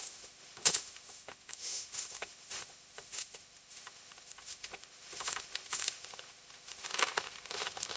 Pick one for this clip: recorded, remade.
remade